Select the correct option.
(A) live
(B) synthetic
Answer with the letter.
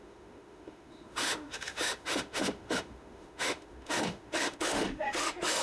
B